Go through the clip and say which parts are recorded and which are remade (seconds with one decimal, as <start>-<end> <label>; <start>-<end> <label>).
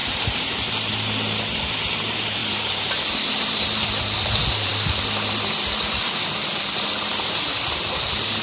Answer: 0.0-8.4 remade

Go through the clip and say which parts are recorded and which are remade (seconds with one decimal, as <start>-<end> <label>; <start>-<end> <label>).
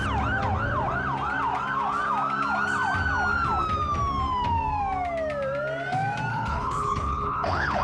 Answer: 0.0-6.3 recorded; 6.3-7.8 remade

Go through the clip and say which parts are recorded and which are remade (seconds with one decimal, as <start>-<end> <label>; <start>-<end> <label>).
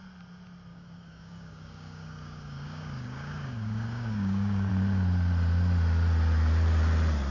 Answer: 0.0-0.7 recorded; 0.7-4.7 remade; 4.7-7.3 recorded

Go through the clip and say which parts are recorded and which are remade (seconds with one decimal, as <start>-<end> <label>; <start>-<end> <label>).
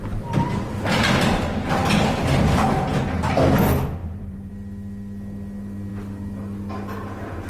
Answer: 0.0-4.0 recorded; 4.0-4.5 remade; 4.5-7.5 recorded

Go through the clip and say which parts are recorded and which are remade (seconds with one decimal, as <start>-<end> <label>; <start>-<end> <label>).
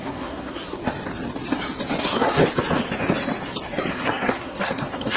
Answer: 0.0-0.8 remade; 0.8-2.0 recorded; 2.0-2.4 remade; 2.4-3.9 recorded; 3.9-5.2 remade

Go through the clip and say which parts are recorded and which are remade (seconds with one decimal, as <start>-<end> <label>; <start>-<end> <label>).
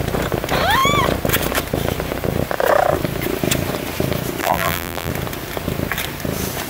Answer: 0.0-4.4 recorded; 4.4-5.1 remade; 5.1-6.7 recorded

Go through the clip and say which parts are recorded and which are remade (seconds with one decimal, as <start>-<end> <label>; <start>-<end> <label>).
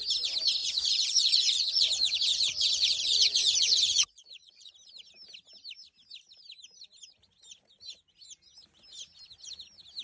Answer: 0.0-0.6 recorded; 0.6-4.7 remade; 4.7-10.0 recorded